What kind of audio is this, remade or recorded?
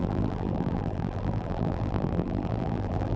remade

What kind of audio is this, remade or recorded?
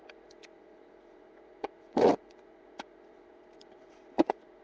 remade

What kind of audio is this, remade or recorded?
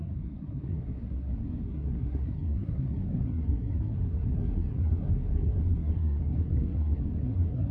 remade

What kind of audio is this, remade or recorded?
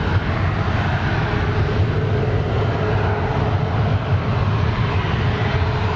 recorded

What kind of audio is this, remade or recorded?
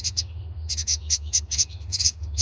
remade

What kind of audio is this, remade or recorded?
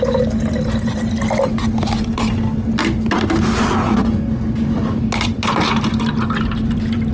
recorded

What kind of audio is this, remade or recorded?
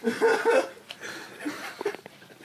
remade